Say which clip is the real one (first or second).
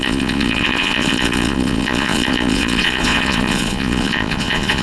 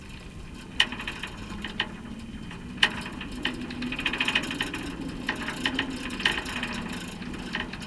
second